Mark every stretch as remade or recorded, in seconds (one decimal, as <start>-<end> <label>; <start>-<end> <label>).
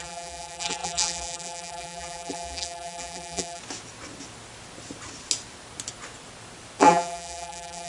0.0-3.6 remade; 3.6-6.8 recorded; 6.8-7.9 remade